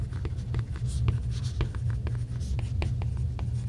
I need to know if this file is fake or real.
real